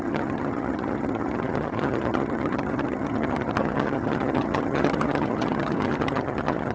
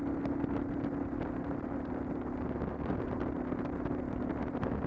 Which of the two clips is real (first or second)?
second